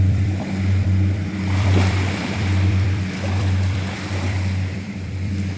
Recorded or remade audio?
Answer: remade